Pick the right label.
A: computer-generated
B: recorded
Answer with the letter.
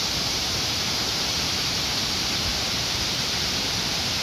A